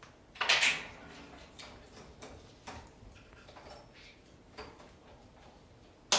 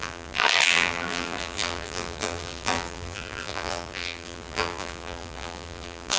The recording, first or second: first